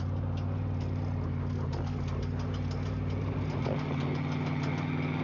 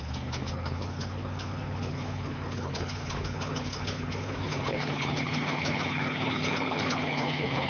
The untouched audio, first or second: first